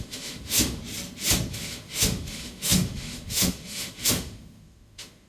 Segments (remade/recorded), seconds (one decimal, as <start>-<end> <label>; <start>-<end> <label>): 0.0-0.8 remade; 0.8-1.5 recorded; 1.5-5.3 remade